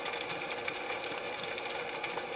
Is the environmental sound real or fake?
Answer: real